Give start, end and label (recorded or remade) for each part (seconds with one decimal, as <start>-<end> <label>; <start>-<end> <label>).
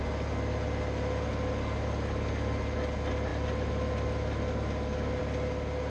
0.0-5.9 recorded